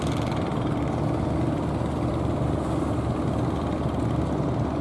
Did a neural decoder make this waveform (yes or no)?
no